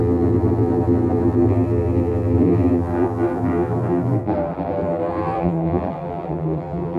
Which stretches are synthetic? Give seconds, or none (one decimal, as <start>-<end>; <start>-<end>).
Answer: 0.0-7.0